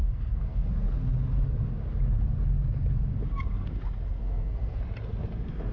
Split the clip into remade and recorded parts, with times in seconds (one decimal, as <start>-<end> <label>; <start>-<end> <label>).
0.0-0.7 remade; 0.7-4.2 recorded; 4.2-4.8 remade; 4.8-5.7 recorded